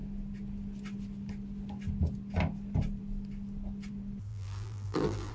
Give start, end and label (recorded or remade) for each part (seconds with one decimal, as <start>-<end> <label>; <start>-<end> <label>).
0.0-4.3 recorded; 4.3-5.3 remade